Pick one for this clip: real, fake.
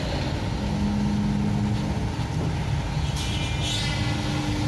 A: real